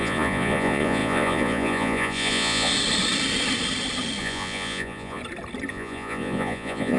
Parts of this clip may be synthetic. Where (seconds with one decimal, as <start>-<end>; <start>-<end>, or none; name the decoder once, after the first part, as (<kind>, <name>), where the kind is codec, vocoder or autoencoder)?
0.0-2.7 (vocoder, Vocos); 4.2-5.2; 5.7-7.0